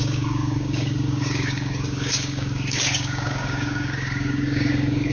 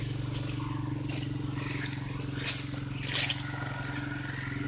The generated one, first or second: first